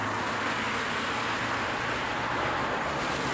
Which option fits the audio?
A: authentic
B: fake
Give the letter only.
A